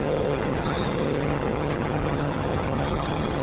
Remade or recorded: remade